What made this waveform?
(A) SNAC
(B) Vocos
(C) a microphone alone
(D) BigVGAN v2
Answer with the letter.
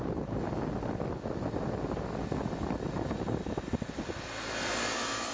C